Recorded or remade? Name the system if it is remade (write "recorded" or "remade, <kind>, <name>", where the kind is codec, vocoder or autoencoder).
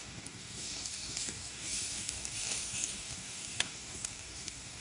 remade, codec, DAC